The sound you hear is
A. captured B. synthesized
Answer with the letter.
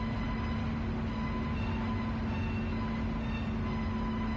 A